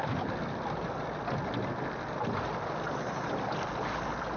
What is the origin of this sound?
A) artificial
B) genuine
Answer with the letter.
B